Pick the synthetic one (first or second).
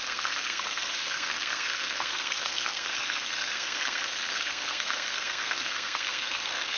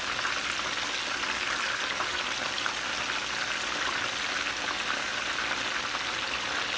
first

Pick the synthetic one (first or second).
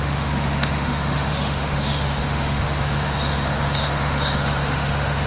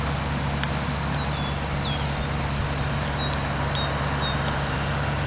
first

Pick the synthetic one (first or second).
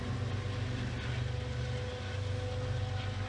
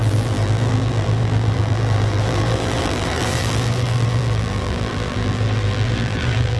second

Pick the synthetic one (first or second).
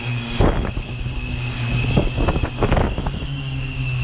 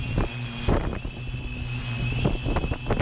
first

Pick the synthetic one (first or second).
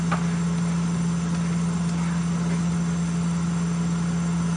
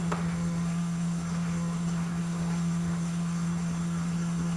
second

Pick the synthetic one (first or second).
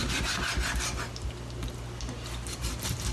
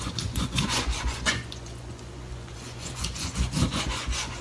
second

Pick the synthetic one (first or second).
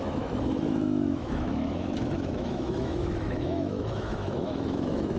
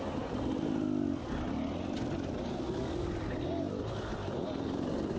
first